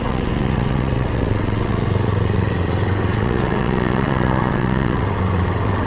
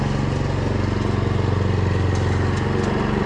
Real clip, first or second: second